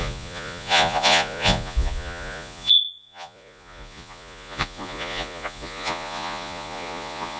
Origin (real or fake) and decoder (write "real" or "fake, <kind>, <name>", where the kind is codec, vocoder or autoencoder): fake, vocoder, Vocos